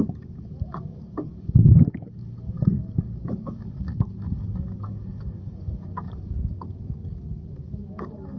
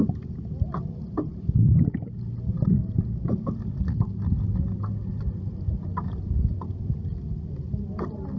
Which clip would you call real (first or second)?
second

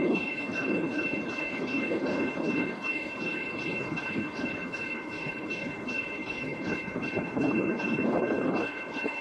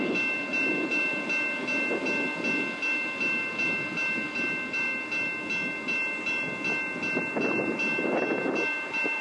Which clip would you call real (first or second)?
second